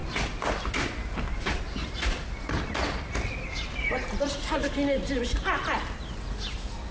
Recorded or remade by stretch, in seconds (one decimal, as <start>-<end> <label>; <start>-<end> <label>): 0.0-6.9 recorded

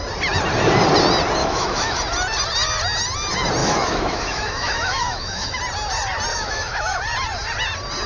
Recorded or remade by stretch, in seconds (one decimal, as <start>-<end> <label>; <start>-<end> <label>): 0.0-1.4 recorded; 1.4-2.0 remade; 2.0-3.6 recorded; 3.6-5.6 remade; 5.6-6.3 recorded; 6.3-7.0 remade; 7.0-8.1 recorded

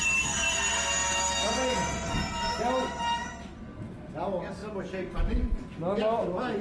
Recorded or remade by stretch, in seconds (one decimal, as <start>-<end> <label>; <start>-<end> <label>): 0.0-6.6 recorded

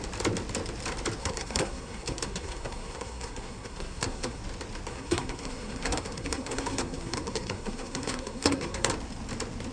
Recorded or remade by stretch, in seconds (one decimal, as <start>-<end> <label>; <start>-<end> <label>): 0.0-1.2 recorded; 1.2-4.4 remade; 4.4-4.9 recorded; 4.9-8.9 remade; 8.9-9.7 recorded

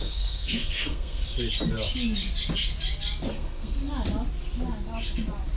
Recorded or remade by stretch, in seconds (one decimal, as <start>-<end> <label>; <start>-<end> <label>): 0.0-1.2 remade; 1.2-3.3 recorded; 3.3-3.8 remade; 3.8-5.6 recorded

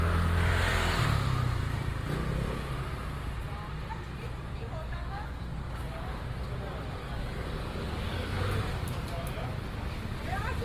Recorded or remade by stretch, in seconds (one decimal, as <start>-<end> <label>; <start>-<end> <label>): 0.0-4.5 recorded; 4.5-6.2 remade; 6.2-7.0 recorded; 7.0-8.6 remade; 8.6-10.6 recorded

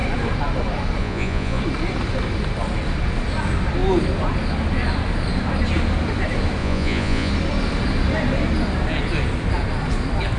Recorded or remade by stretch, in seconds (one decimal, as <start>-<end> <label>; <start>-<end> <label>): 0.0-1.0 recorded; 1.0-1.6 remade; 1.6-6.6 recorded; 6.6-7.3 remade; 7.3-10.4 recorded